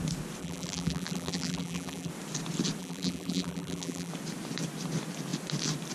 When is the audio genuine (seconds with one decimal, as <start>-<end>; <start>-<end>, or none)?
0.0-0.4; 2.1-2.8; 4.1-5.9